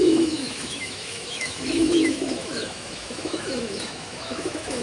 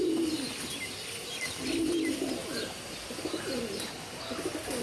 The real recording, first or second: second